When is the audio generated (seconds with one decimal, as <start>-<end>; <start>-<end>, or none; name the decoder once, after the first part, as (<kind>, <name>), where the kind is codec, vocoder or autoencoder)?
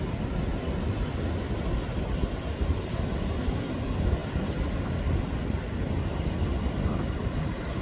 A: none